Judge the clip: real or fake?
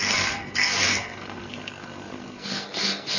fake